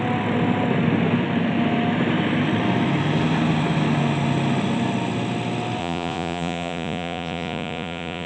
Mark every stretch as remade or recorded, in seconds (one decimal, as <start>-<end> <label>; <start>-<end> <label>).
0.0-5.8 recorded; 5.8-8.3 remade